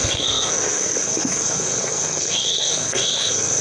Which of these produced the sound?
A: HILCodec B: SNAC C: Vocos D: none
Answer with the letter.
B